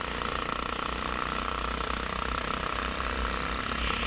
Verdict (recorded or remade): recorded